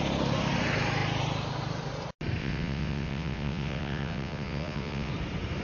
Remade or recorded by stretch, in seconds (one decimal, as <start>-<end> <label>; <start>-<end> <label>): 0.0-2.4 recorded; 2.4-5.1 remade; 5.1-5.6 recorded

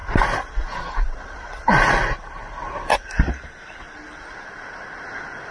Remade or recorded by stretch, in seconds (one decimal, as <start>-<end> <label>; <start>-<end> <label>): 0.0-5.5 recorded

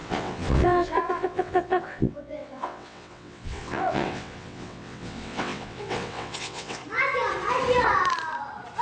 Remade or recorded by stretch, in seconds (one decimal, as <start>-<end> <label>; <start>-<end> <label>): 0.0-6.8 remade; 6.8-8.8 recorded

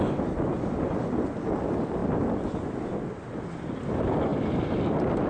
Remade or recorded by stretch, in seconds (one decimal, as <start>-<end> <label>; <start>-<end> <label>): 0.0-5.3 recorded

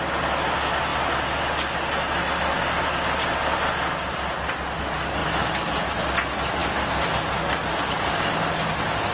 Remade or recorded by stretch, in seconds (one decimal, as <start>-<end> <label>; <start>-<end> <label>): 0.0-9.1 recorded

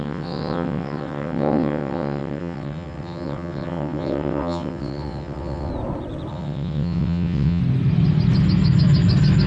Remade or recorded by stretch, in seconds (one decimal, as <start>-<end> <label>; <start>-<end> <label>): 0.0-5.7 remade; 5.7-6.3 recorded; 6.3-7.6 remade; 7.6-9.5 recorded